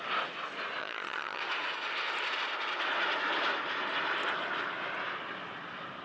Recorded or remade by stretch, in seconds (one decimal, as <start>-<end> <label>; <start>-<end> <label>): 0.0-0.8 recorded; 0.8-1.4 remade; 1.4-6.0 recorded